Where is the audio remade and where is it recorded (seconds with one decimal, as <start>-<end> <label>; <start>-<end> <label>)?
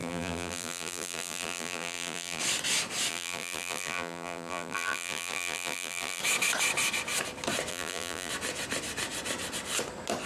0.0-2.4 remade; 2.4-3.1 recorded; 3.1-6.2 remade; 6.2-7.7 recorded; 7.7-8.3 remade; 8.3-10.3 recorded